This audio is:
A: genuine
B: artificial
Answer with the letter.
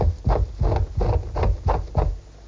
A